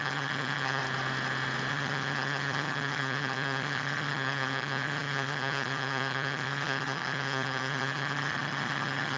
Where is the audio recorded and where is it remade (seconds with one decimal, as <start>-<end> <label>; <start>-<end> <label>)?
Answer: 0.0-0.8 remade; 0.8-1.7 recorded; 1.7-9.2 remade